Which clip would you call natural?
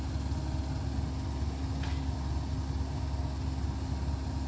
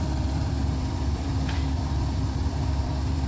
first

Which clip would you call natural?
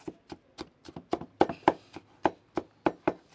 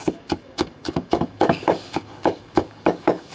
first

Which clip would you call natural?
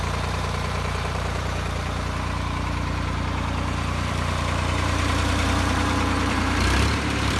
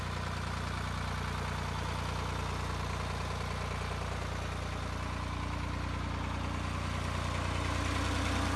second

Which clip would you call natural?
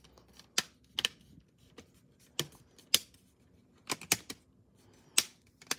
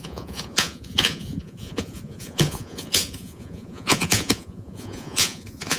first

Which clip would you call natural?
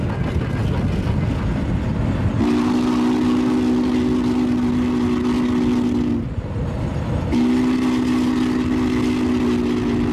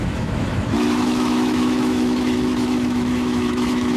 first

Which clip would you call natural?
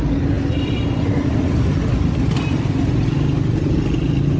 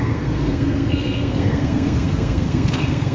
first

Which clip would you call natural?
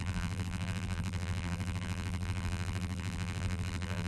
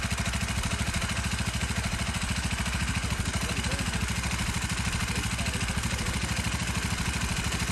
second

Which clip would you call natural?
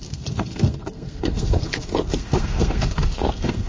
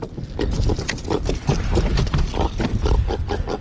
second